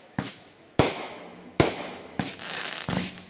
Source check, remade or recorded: remade